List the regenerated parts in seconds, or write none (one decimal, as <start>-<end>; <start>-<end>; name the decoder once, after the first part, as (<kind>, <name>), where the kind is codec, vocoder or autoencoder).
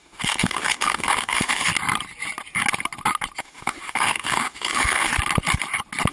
0.0-1.7 (autoencoder, DAC-VAE); 3.4-5.1